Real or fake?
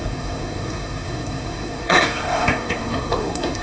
fake